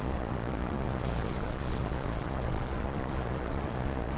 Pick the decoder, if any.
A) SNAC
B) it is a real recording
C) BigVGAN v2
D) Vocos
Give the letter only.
D